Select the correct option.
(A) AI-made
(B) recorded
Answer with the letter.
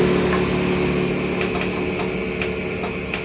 B